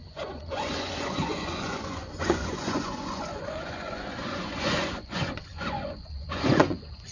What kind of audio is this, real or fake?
fake